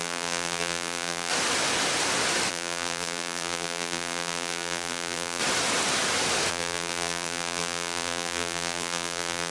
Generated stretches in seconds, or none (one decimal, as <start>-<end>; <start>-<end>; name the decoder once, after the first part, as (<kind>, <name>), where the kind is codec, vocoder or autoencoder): 0.0-1.3 (vocoder, BigVGAN v2); 2.5-5.4; 6.5-9.5